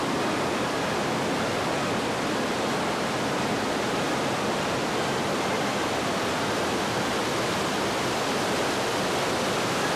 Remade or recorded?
recorded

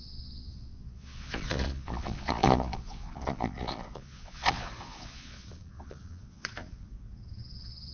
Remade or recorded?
remade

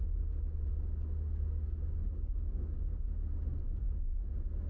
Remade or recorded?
recorded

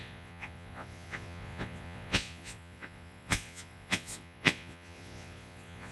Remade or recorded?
remade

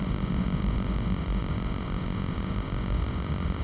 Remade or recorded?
remade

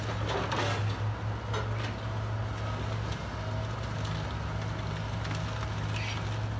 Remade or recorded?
recorded